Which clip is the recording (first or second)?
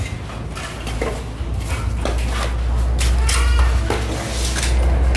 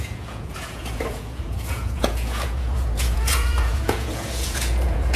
first